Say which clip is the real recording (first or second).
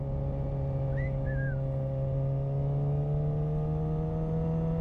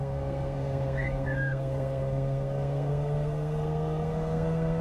first